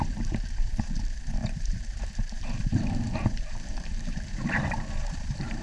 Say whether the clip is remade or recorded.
remade